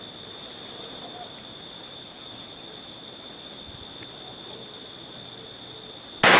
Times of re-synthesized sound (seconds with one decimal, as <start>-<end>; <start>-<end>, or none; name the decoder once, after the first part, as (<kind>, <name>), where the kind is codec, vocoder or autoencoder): none